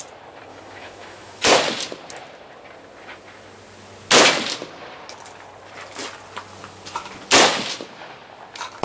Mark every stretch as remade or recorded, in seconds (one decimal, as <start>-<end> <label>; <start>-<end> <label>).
0.0-0.5 recorded; 0.5-1.5 remade; 1.5-8.8 recorded